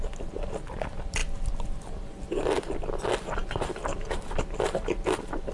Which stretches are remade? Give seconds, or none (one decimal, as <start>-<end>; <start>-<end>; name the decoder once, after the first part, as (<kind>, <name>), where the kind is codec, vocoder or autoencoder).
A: none